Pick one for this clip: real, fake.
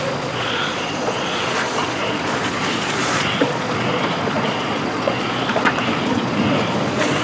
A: fake